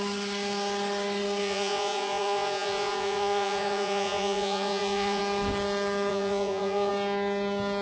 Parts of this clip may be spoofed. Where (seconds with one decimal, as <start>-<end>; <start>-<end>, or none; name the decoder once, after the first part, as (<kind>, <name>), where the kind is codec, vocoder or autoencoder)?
1.4-5.2 (vocoder, Vocos); 6.1-6.9